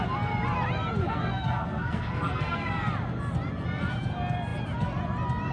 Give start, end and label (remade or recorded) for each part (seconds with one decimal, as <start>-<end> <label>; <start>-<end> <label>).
0.0-1.0 recorded; 1.0-2.7 remade; 2.7-5.5 recorded